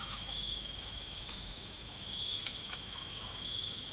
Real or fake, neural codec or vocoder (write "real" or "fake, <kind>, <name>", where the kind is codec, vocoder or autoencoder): fake, autoencoder, DAC-VAE